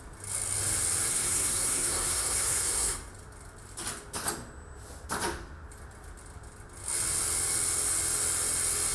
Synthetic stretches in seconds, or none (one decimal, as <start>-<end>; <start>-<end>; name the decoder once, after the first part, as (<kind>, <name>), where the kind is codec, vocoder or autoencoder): 1.1-3.1 (codec, SNAC)